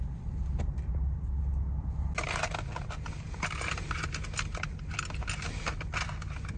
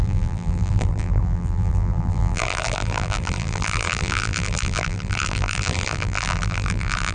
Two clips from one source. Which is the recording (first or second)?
first